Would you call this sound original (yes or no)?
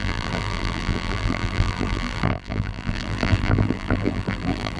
no